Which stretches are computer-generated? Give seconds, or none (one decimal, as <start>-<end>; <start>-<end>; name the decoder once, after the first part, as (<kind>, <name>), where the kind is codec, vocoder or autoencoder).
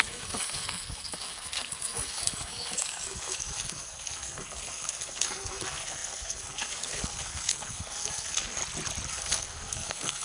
0.0-8.6 (codec, SNAC); 9.1-10.2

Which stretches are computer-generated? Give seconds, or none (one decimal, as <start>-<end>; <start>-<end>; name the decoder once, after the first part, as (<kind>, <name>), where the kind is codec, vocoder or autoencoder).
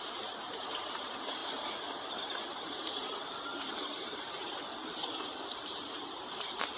0.0-1.4 (vocoder, BigVGAN v2); 2.2-6.8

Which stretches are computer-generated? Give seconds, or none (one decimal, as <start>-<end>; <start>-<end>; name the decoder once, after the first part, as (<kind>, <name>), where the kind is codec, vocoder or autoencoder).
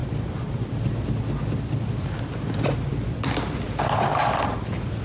none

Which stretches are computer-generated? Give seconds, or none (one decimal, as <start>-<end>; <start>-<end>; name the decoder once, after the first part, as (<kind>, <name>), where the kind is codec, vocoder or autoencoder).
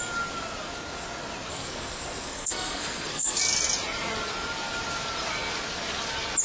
1.5-3.4 (codec, SNAC)